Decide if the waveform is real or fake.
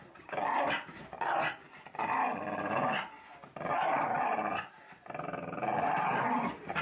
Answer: real